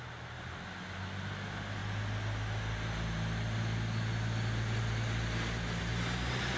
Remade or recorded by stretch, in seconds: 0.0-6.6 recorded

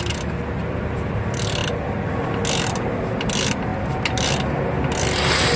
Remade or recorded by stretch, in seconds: 0.0-5.6 recorded

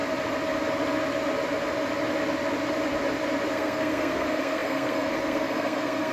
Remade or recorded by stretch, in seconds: 0.0-3.5 recorded; 3.5-6.1 remade

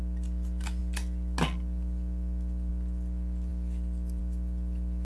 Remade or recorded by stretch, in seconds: 0.0-5.0 recorded

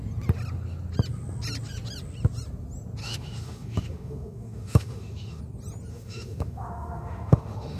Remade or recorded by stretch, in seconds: 0.0-3.0 recorded; 3.0-5.4 remade; 5.4-5.9 recorded; 5.9-7.8 remade

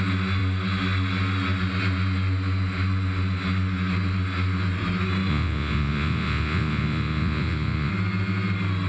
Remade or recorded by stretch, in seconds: 0.0-5.3 recorded; 5.3-7.9 remade; 7.9-8.9 recorded

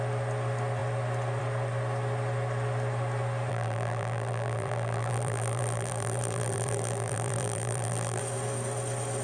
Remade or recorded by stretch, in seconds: 0.0-3.5 recorded; 3.5-8.2 remade; 8.2-9.2 recorded

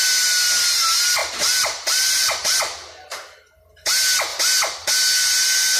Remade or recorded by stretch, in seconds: 0.0-1.2 recorded; 1.2-2.6 remade; 2.6-5.8 recorded